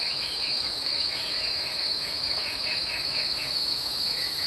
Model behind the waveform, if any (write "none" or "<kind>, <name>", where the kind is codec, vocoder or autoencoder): autoencoder, DAC-VAE